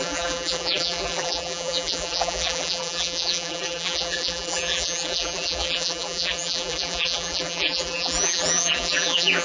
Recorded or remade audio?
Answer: remade